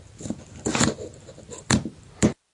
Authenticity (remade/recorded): recorded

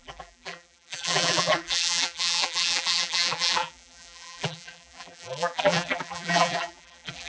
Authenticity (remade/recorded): remade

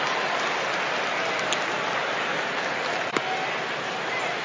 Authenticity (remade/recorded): recorded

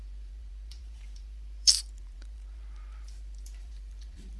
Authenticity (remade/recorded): remade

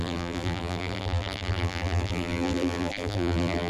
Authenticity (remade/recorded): remade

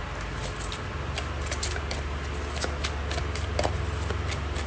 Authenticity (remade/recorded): recorded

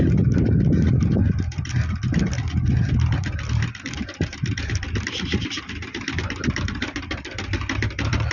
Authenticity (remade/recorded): remade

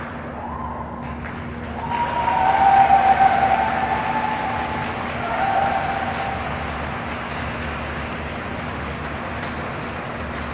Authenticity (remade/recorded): recorded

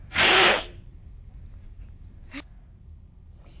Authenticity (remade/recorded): remade